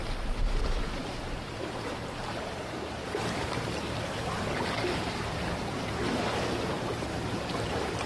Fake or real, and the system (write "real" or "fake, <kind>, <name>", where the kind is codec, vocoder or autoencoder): fake, vocoder, BigVGAN v2